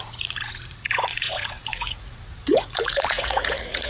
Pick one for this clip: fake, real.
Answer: fake